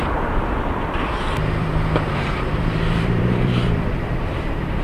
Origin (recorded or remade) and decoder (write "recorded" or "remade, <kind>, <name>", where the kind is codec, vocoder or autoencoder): remade, vocoder, BigVGAN v2